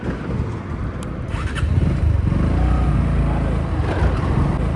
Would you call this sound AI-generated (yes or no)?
no